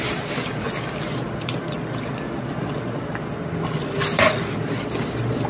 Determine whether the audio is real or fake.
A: real